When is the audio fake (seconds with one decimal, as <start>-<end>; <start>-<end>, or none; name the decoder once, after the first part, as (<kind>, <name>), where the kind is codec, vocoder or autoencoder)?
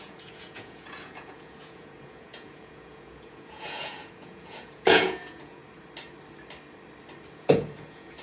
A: 0.0-5.6 (vocoder, Vocos); 7.3-8.2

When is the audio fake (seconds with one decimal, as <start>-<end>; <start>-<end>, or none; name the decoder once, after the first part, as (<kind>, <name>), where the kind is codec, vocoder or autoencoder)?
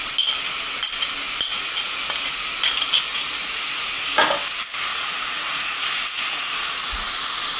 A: 1.5-2.0 (vocoder, Vocos); 3.1-3.9; 4.9-7.1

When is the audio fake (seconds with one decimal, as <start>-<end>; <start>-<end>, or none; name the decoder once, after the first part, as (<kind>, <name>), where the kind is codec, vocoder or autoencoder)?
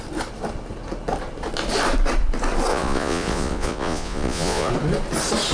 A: 2.7-4.7 (vocoder, Vocos)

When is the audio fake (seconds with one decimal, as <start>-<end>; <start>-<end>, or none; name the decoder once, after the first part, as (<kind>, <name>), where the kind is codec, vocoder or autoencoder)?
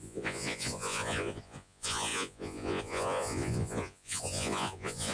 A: 0.0-5.1 (vocoder, Vocos)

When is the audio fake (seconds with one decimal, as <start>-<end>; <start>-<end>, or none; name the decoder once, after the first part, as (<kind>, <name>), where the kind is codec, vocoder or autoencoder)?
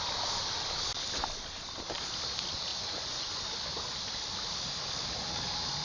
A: 2.7-3.4 (vocoder, Vocos)